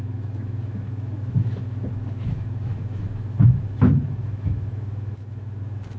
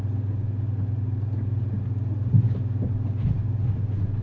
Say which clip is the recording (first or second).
second